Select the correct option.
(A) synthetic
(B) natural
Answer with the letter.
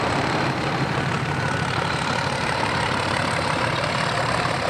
A